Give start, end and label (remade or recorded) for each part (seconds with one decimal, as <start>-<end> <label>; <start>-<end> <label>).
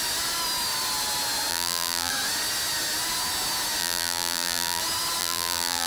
0.0-1.5 recorded; 1.5-2.1 remade; 2.1-3.8 recorded; 3.8-4.8 remade; 4.8-5.2 recorded; 5.2-5.9 remade